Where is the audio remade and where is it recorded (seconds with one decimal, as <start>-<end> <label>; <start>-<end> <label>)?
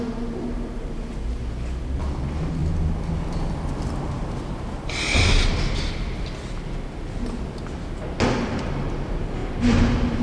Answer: 0.0-10.2 recorded